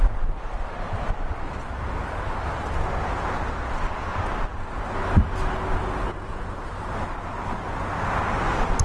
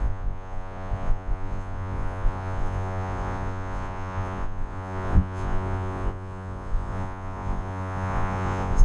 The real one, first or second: first